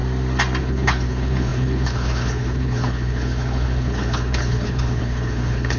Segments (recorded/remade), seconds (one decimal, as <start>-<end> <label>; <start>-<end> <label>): 0.0-0.6 recorded; 0.6-5.8 remade